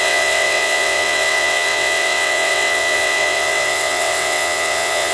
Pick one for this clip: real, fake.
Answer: fake